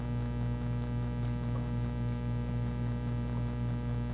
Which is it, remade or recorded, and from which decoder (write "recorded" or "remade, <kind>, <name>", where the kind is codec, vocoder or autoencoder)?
recorded